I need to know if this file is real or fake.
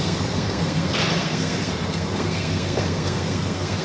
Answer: fake